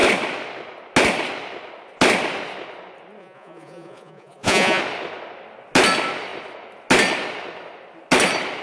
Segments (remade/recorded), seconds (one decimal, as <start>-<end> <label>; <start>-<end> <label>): 0.0-3.2 recorded; 3.2-4.8 remade; 4.8-8.6 recorded